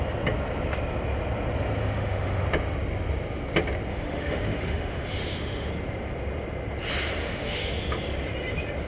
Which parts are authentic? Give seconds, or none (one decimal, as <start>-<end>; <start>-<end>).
0.0-1.8; 2.4-3.9; 5.7-7.2; 7.7-8.9